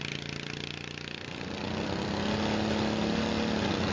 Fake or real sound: real